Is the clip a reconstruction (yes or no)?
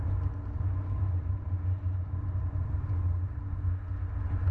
no